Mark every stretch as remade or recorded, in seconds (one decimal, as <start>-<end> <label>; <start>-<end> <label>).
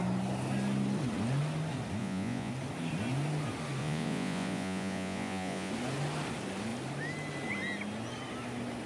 0.0-2.0 recorded; 2.0-2.5 remade; 2.5-3.8 recorded; 3.8-5.7 remade; 5.7-8.9 recorded